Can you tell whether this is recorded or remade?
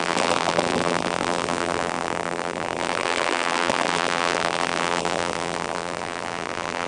remade